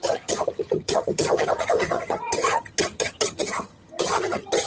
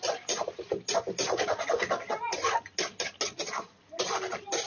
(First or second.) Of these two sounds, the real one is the second